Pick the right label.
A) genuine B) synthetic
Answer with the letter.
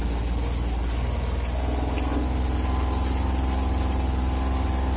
A